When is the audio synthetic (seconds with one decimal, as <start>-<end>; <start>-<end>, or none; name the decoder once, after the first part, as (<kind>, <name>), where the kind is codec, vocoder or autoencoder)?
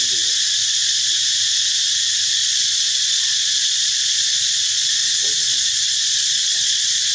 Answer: 0.6-1.1 (vocoder, Vocos); 2.4-7.1